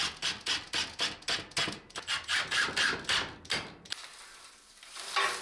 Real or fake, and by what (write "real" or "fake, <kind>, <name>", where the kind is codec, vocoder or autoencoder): real